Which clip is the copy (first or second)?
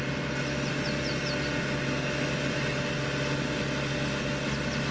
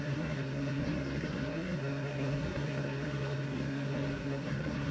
second